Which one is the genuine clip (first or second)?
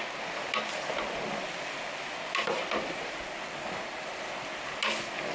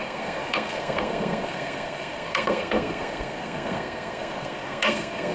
first